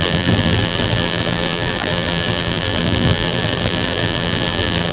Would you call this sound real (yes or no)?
no